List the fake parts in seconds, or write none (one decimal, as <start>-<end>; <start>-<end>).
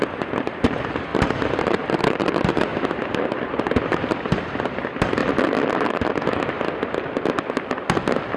0.0-2.7; 3.3-5.2